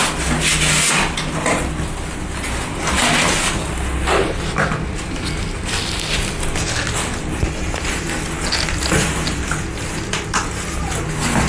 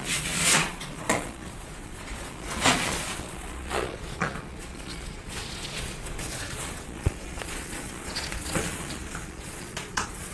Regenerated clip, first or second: second